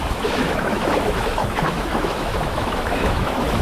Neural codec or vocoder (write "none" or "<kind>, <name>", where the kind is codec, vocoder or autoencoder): autoencoder, DAC-VAE